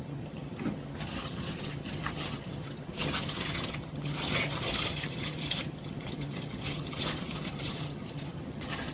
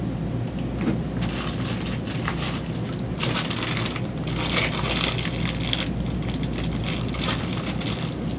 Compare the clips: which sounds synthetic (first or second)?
first